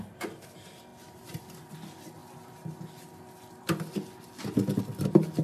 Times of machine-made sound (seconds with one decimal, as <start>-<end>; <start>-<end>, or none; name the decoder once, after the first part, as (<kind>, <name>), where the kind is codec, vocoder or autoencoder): 0.9-1.7 (vocoder, BigVGAN v2)